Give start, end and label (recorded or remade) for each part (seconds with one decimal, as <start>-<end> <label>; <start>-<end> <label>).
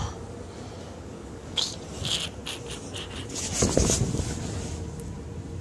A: 0.0-0.8 recorded; 0.8-1.7 remade; 1.7-5.6 recorded